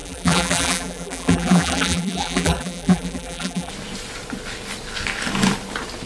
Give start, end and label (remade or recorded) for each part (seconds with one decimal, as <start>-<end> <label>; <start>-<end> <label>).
0.0-3.7 remade; 3.7-6.1 recorded